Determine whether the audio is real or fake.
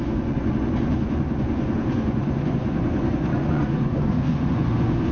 fake